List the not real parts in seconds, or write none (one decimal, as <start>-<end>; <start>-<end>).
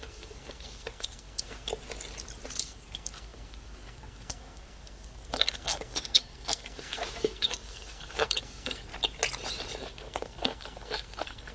0.0-1.7; 2.6-8.9; 9.8-11.5